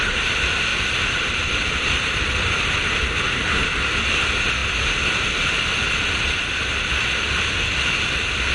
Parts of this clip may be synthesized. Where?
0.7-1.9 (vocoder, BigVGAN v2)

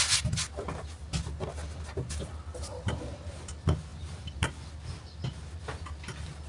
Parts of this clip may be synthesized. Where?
2.7-3.5 (vocoder, BigVGAN v2); 3.9-4.5